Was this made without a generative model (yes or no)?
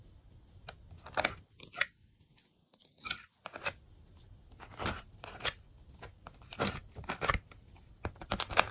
yes